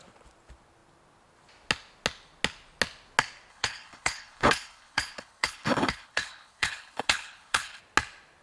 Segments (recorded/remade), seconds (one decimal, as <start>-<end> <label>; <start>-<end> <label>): 0.0-3.5 recorded; 3.5-7.8 remade; 7.8-8.4 recorded